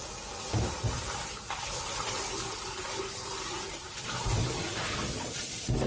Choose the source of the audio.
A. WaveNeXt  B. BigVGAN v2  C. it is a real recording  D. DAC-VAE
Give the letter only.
C